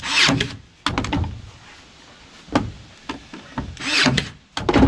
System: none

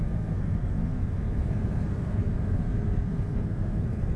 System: codec, SNAC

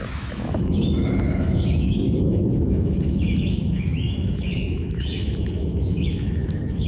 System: autoencoder, DAC-VAE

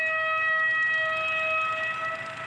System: none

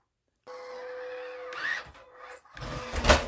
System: none